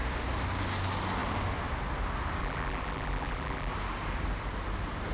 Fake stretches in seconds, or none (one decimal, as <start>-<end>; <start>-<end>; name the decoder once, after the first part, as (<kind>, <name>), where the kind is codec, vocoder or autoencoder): 2.4-3.7 (vocoder, BigVGAN v2)